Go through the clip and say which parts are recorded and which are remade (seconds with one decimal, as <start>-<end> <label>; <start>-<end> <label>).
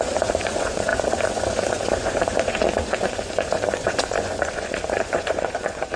0.0-6.0 remade